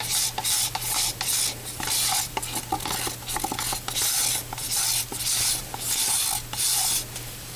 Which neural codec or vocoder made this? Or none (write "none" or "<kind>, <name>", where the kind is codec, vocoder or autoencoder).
none